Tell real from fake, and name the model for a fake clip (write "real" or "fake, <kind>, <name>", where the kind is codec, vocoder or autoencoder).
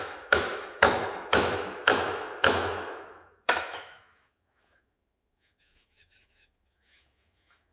fake, autoencoder, DAC-VAE